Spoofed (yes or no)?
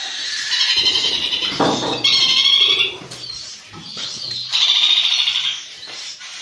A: yes